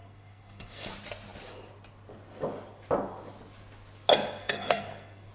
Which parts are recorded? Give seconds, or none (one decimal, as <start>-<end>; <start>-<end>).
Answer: 0.9-4.4